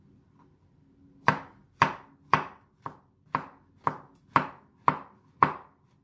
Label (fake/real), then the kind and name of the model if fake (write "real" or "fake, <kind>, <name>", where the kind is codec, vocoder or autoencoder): fake, vocoder, BigVGAN v2